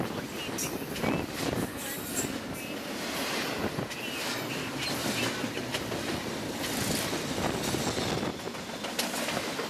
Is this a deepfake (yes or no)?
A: no